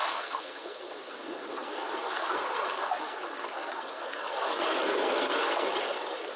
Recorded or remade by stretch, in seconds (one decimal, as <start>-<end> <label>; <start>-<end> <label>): 0.0-6.4 remade